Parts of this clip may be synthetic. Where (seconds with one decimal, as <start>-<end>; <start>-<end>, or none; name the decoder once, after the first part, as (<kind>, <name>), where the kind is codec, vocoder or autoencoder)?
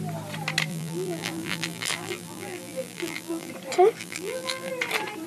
0.7-3.5 (vocoder, BigVGAN v2); 4.0-4.7